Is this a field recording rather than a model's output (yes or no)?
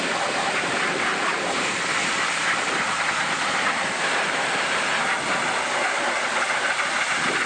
yes